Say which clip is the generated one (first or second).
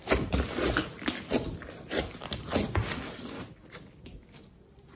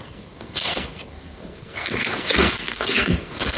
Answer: second